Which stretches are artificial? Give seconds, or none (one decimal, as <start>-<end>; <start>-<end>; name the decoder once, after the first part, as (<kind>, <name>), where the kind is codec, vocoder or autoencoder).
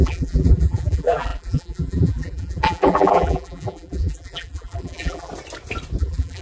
0.0-5.3 (vocoder, BigVGAN v2); 6.0-6.4